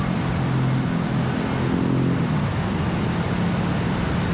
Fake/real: real